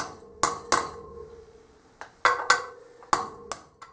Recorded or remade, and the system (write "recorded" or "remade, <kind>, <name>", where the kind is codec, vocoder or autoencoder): recorded